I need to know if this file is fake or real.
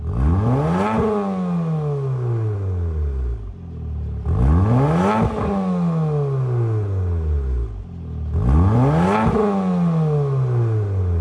real